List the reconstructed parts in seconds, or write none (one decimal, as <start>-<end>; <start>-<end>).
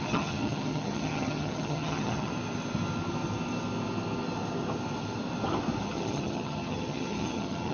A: 0.0-2.3; 5.8-7.7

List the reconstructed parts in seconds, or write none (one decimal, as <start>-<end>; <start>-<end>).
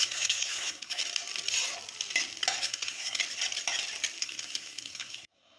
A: 0.0-1.0; 2.6-3.2; 4.2-5.6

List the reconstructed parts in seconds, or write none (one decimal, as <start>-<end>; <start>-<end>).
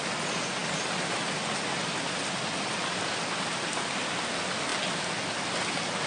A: none